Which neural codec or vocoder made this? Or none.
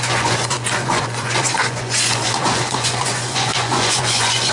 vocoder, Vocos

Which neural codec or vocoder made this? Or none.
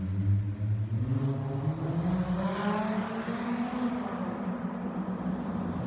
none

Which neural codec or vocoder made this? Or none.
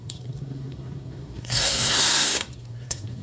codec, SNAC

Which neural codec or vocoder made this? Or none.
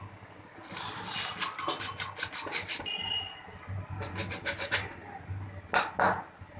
none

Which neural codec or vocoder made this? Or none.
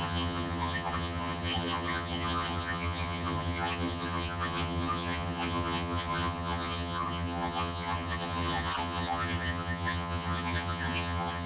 vocoder, HiFi-GAN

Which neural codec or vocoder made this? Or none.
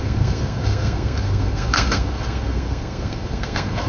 codec, SNAC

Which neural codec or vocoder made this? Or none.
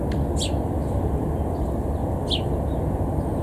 none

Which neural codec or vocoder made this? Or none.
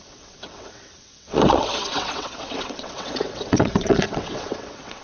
vocoder, WaveNeXt